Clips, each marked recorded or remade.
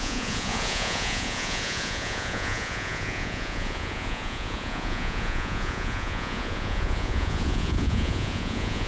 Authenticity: remade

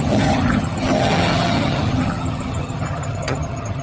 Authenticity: remade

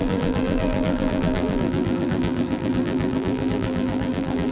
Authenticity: remade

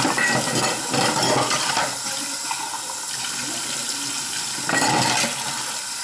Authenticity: recorded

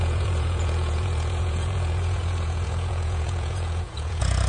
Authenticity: remade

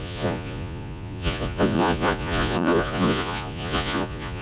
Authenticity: remade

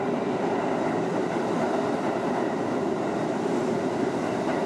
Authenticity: remade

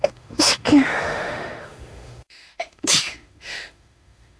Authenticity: remade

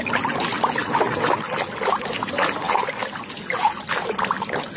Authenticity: recorded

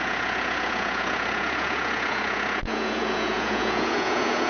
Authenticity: remade